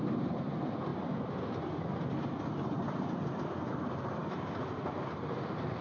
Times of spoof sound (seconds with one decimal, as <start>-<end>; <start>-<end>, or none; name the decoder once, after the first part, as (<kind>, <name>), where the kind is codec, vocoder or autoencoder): 0.0-0.9 (vocoder, BigVGAN v2); 2.1-5.8